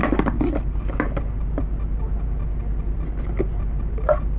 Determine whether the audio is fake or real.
real